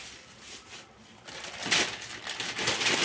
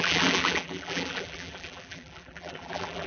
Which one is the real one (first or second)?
first